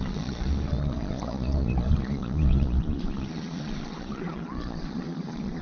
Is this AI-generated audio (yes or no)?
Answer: yes